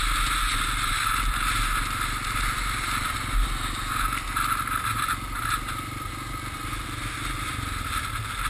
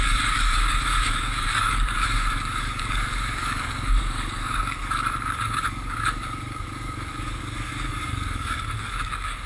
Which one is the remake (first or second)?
second